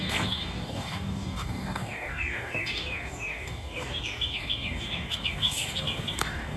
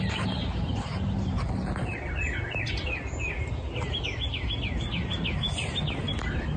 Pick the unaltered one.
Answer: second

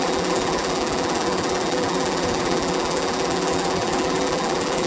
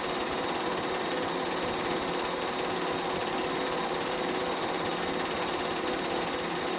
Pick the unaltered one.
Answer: second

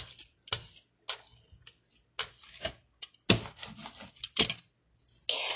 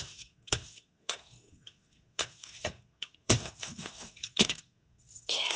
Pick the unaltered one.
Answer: first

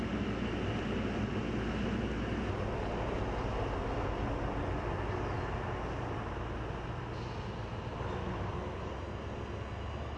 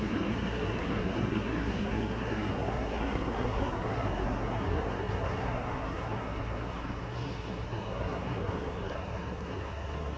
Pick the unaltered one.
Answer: first